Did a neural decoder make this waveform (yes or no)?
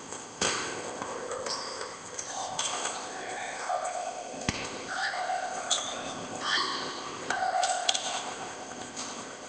yes